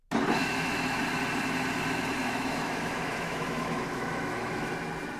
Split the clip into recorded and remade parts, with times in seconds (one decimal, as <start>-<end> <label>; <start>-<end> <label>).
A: 0.0-0.4 recorded; 0.4-1.0 remade; 1.0-2.2 recorded; 2.2-4.7 remade; 4.7-5.2 recorded